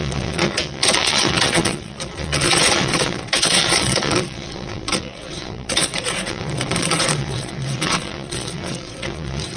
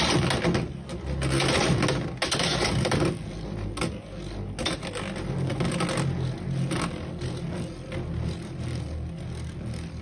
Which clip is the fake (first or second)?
first